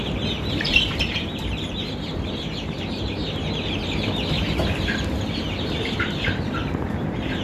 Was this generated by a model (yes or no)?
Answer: yes